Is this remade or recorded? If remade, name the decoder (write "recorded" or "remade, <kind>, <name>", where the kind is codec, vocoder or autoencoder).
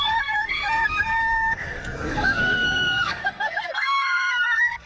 remade, codec, SNAC